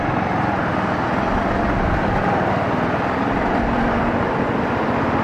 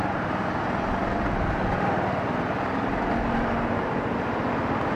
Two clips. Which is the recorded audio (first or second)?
second